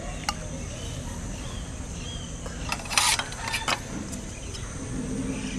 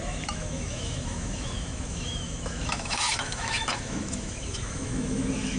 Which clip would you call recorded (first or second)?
first